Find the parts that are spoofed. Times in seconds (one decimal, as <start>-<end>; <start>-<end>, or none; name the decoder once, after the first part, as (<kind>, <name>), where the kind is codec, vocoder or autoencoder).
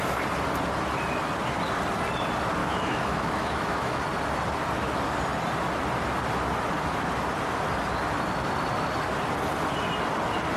2.6-4.0 (autoencoder, DAC-VAE)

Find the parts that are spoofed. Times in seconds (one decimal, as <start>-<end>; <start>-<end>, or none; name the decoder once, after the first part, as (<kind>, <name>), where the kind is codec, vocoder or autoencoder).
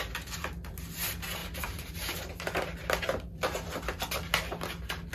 1.4-2.3 (vocoder, BigVGAN v2)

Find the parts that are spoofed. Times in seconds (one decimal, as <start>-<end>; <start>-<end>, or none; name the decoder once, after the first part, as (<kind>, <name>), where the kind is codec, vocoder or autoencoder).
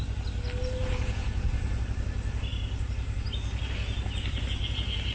0.8-1.8 (vocoder, Vocos)